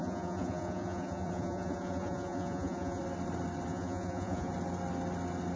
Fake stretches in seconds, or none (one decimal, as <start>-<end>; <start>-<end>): 0.0-3.0; 3.7-4.5